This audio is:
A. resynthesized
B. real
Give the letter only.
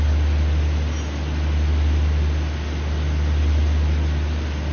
B